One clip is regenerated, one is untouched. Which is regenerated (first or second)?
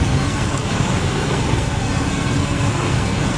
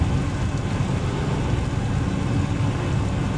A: first